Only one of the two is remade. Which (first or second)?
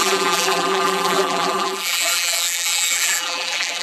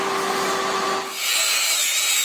first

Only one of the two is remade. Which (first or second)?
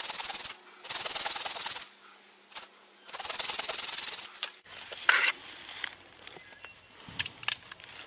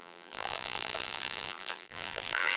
second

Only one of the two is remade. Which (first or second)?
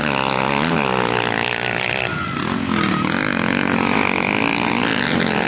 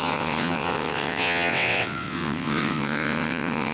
second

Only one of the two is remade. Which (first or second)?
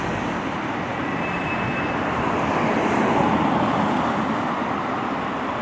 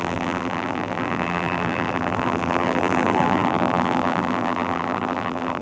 second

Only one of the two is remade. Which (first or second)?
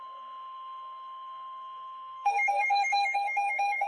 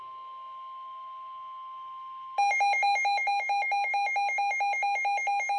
first